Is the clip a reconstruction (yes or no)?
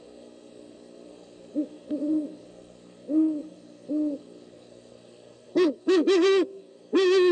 yes